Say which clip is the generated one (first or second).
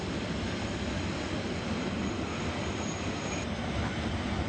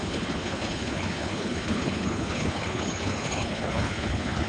second